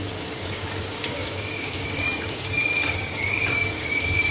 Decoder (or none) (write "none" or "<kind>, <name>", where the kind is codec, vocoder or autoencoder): codec, DAC